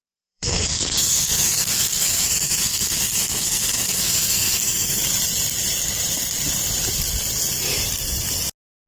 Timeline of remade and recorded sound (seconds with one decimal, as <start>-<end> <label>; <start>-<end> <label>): 0.0-5.0 remade; 5.0-8.9 recorded